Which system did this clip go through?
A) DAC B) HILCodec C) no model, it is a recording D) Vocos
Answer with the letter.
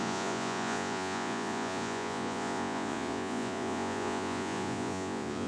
D